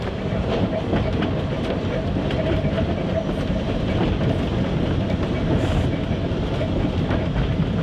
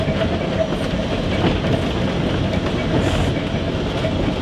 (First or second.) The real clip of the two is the second